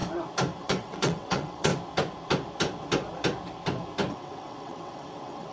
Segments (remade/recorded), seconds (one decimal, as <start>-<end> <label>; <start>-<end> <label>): 0.0-0.6 recorded; 0.6-1.7 remade; 1.7-4.1 recorded; 4.1-5.5 remade